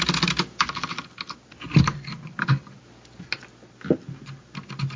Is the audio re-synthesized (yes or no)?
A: no